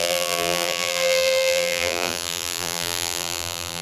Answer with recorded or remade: remade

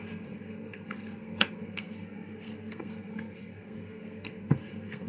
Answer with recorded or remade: remade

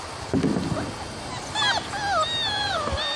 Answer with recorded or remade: recorded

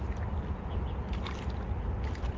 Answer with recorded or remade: recorded